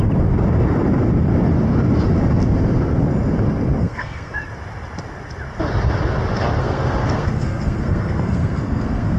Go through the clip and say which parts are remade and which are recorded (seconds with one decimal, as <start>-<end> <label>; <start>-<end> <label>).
0.0-3.8 recorded; 3.8-4.3 remade; 4.3-6.6 recorded; 6.6-9.2 remade